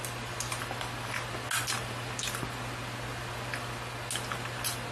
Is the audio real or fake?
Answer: real